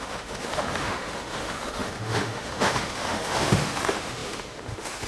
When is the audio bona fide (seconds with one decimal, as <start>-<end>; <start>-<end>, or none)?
none